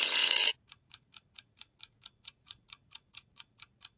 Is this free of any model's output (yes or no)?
no